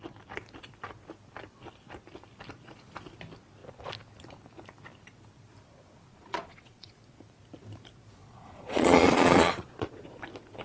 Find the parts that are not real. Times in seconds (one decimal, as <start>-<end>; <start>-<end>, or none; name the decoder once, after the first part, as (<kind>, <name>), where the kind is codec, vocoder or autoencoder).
6.1-6.9 (vocoder, Vocos); 8.2-10.2